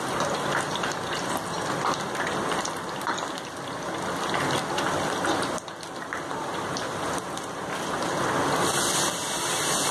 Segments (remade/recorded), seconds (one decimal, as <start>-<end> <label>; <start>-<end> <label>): 0.0-9.9 recorded